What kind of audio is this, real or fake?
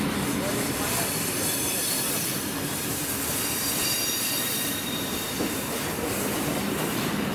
fake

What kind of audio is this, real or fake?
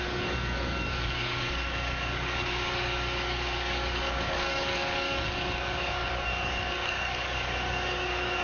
fake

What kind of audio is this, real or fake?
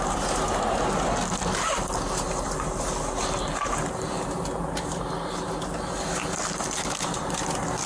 real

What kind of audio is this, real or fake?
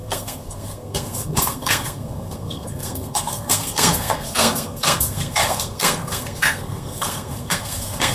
fake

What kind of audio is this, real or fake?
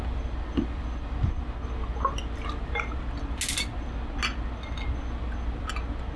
real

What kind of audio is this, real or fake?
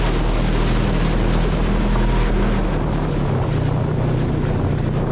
real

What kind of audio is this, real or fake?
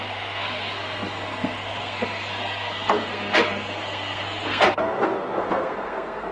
fake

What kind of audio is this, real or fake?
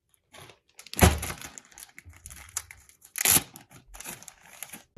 real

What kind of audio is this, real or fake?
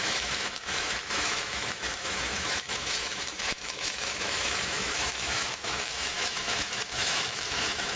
fake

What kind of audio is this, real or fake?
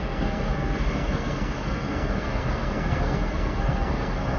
fake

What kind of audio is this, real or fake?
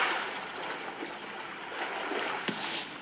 real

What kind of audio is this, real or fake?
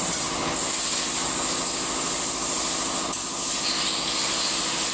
real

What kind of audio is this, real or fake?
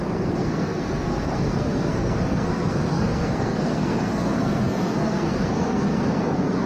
fake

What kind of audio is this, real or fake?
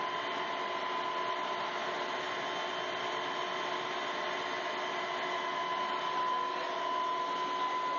real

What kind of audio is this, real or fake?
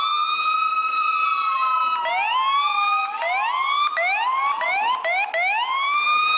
real